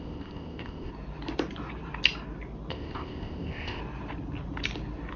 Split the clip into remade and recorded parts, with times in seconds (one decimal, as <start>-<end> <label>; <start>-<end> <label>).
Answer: 0.0-0.9 remade; 0.9-2.7 recorded; 2.7-3.8 remade; 3.8-5.2 recorded